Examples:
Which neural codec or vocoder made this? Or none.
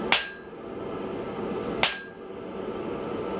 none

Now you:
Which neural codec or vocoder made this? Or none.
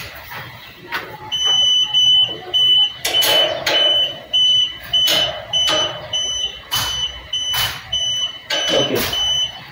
vocoder, BigVGAN v2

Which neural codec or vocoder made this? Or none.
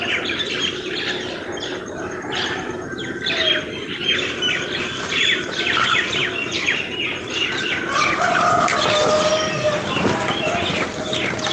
vocoder, BigVGAN v2